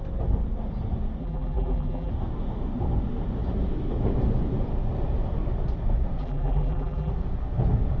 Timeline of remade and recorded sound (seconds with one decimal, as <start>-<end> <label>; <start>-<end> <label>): 0.0-1.2 recorded; 1.2-2.1 remade; 2.1-6.2 recorded; 6.2-7.1 remade; 7.1-8.0 recorded